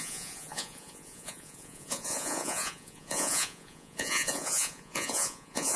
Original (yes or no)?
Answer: no